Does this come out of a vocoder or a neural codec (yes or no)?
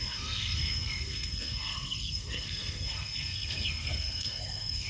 yes